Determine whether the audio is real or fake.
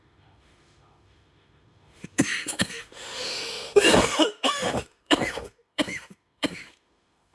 fake